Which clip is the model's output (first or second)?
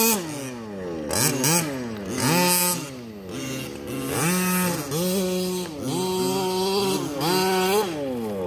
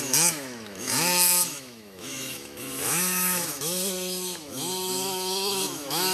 second